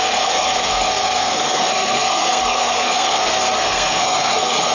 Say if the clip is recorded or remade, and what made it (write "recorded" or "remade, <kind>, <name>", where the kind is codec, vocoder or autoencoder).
remade, codec, SNAC